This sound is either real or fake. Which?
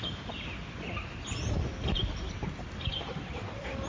real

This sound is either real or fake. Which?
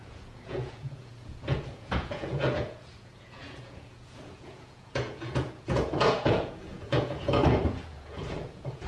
fake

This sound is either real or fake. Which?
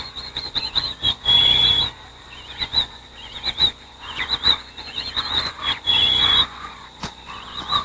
fake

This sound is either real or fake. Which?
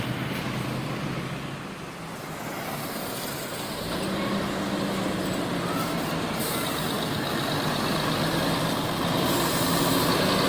real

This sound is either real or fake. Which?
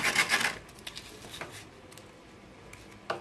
real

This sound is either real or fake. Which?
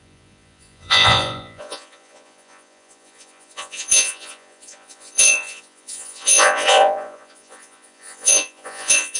fake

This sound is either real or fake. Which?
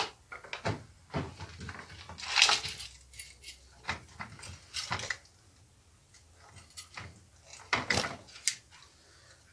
real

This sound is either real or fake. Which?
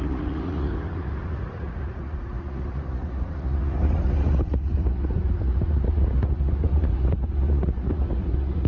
fake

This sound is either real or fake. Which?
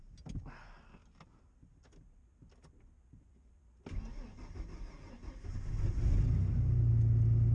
real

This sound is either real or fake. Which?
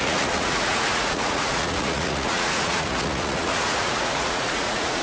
fake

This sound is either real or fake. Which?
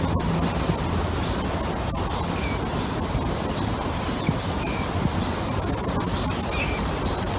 real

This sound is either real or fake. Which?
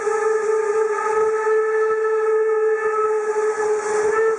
real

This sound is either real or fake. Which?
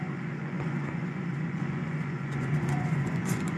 fake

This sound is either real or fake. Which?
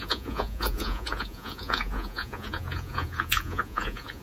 fake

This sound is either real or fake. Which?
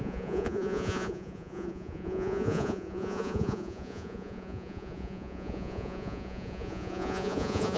fake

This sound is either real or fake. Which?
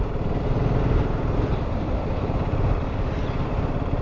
real